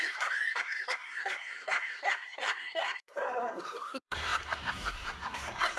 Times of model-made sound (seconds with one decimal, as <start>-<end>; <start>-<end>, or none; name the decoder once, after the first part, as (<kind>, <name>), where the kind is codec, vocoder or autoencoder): 0.0-5.8 (codec, SNAC)